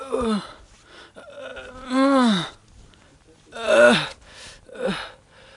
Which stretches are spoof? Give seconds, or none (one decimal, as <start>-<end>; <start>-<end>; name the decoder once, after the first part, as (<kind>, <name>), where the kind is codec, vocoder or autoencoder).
none